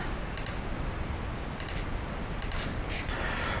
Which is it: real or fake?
real